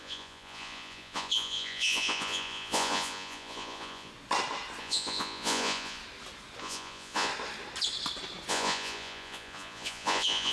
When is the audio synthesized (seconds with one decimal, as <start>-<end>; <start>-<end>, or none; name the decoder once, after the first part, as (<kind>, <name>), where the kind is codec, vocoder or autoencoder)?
0.0-4.1 (vocoder, Vocos); 4.8-6.0; 6.6-7.3; 8.5-10.5